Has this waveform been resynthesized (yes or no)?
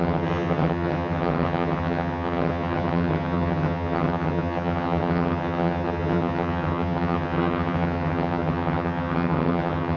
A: yes